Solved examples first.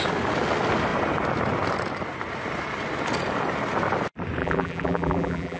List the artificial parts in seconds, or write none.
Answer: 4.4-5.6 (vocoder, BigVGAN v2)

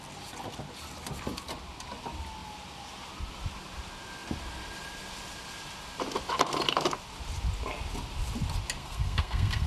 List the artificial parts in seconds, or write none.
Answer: 8.8-9.7 (codec, SNAC)

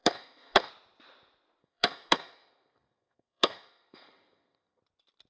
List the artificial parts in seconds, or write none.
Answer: 0.0-0.7 (codec, SNAC); 1.6-4.8